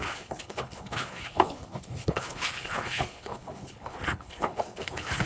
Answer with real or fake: fake